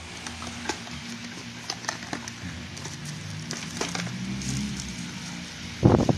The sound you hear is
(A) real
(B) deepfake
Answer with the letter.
A